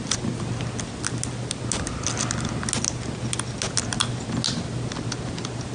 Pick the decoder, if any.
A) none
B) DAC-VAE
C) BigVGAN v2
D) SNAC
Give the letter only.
A